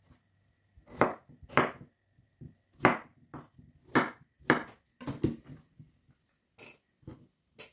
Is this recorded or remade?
recorded